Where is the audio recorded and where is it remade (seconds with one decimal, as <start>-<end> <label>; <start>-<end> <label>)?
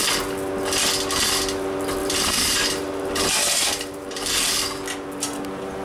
0.0-2.0 recorded; 2.0-4.5 remade; 4.5-5.8 recorded